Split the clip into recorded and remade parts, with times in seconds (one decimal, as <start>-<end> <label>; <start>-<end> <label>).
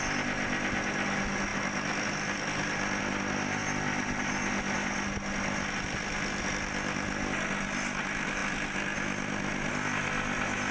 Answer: 0.0-10.7 recorded